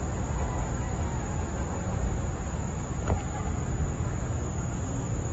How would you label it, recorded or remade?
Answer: recorded